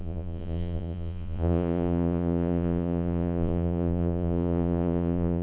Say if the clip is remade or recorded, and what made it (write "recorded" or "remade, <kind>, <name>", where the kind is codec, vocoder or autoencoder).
remade, vocoder, Vocos